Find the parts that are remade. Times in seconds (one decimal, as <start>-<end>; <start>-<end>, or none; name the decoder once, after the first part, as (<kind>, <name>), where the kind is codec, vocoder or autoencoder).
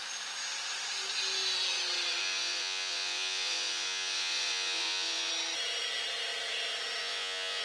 2.2-5.3 (vocoder, Vocos); 7.0-7.6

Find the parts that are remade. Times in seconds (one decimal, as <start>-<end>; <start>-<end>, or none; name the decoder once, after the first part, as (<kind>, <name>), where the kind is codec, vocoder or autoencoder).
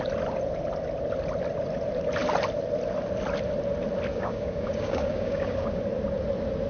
4.1-5.8 (codec, DAC)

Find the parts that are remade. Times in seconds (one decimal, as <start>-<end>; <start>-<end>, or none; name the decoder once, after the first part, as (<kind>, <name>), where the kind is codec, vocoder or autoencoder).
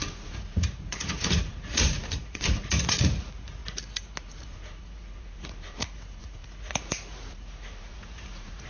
0.0-3.6 (vocoder, Vocos); 4.2-8.7